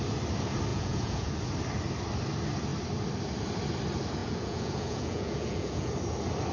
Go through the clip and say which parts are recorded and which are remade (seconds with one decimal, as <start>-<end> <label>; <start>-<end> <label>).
0.0-0.7 recorded; 0.7-1.3 remade; 1.3-4.2 recorded; 4.2-5.9 remade; 5.9-6.5 recorded